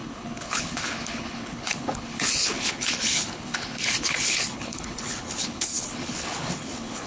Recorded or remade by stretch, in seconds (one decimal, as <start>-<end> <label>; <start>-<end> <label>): 0.0-7.1 remade